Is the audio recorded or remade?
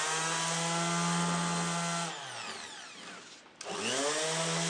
recorded